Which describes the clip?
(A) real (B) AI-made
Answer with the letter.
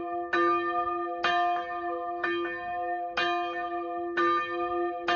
A